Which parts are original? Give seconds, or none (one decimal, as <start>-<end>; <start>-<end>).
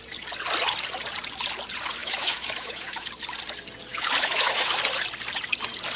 0.0-2.0; 3.1-3.9; 4.8-6.0